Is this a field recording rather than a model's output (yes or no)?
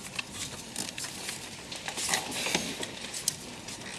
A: yes